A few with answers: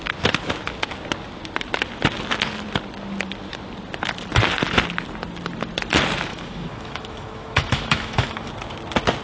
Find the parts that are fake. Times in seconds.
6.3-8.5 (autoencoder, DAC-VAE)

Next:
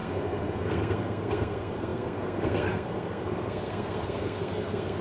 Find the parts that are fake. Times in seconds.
0.0-5.0 (codec, SNAC)

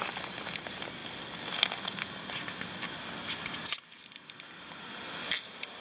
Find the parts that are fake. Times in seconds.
none

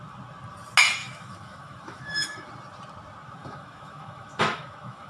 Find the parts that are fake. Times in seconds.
1.0-2.5 (autoencoder, DAC-VAE); 3.4-5.1

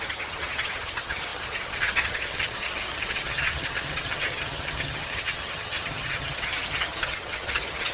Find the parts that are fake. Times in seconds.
0.0-7.9 (vocoder, HiFi-GAN)

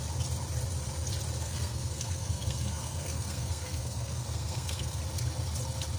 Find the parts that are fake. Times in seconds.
1.4-5.0 (codec, SNAC)

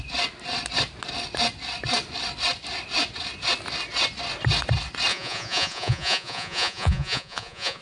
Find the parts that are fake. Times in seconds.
5.1-7.8 (vocoder, Vocos)